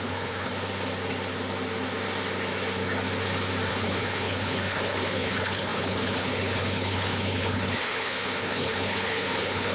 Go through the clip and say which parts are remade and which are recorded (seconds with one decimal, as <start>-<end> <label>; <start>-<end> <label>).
0.0-0.5 remade; 0.5-3.7 recorded; 3.7-9.7 remade